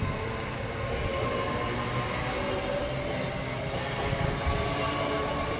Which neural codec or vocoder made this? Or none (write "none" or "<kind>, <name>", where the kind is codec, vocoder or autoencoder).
none